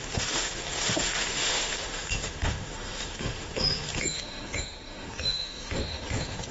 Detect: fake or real fake